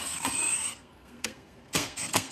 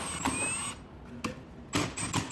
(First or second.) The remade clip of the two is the first